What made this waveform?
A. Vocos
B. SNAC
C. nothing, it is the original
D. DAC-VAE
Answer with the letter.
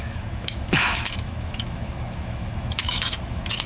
D